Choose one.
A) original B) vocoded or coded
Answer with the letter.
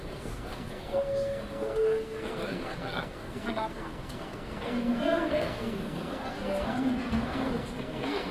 B